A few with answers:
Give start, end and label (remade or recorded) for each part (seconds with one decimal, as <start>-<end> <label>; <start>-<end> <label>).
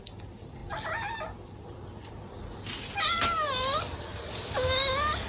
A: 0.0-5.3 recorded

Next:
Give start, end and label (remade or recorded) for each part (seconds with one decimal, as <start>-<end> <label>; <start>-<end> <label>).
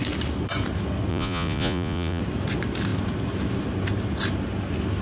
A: 0.0-1.1 recorded; 1.1-2.2 remade; 2.2-5.0 recorded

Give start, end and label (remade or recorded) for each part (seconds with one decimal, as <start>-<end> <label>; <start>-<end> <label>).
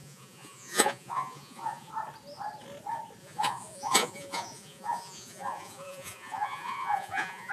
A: 0.0-1.9 remade; 1.9-3.2 recorded; 3.2-7.5 remade